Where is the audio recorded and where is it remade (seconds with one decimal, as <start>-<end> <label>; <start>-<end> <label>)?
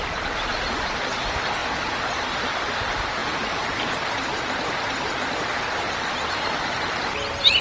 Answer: 0.0-0.5 remade; 0.5-1.2 recorded; 1.2-1.6 remade; 1.6-2.8 recorded; 2.8-7.6 remade